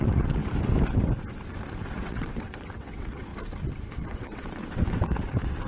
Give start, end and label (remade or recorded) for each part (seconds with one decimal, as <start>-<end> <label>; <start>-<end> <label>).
0.0-0.4 remade; 0.4-1.9 recorded; 1.9-3.3 remade; 3.3-3.9 recorded; 3.9-5.7 remade

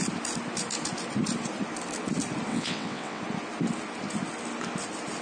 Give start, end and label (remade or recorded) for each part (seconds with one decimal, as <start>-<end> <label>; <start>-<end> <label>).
0.0-2.5 recorded; 2.5-3.2 remade; 3.2-5.2 recorded

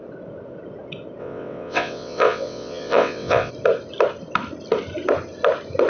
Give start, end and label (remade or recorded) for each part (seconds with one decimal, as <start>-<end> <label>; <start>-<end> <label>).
0.0-1.2 recorded; 1.2-3.5 remade; 3.5-5.9 recorded

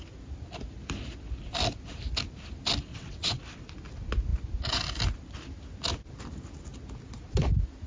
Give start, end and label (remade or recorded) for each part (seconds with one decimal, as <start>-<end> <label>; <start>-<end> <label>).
0.0-2.9 recorded; 2.9-3.4 remade; 3.4-7.9 recorded

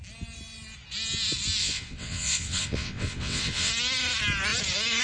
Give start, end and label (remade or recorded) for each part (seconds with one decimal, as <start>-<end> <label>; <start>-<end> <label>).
0.0-1.6 recorded; 1.6-3.7 remade; 3.7-5.0 recorded